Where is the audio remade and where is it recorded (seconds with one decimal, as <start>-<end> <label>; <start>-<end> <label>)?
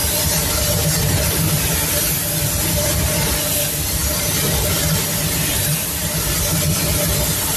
0.0-7.6 recorded